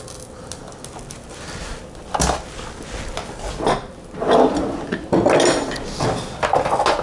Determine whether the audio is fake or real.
real